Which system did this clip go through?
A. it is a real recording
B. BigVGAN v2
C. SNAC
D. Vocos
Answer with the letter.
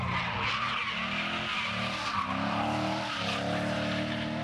A